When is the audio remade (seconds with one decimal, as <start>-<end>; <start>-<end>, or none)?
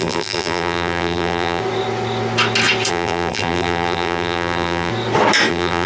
0.0-1.6; 2.9-4.9; 5.5-5.9